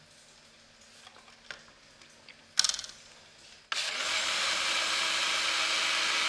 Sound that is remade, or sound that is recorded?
recorded